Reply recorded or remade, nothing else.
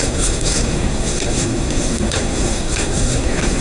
remade